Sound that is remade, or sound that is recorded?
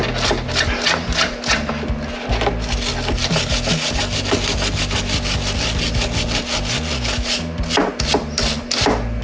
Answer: recorded